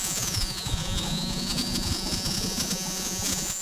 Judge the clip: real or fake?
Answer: fake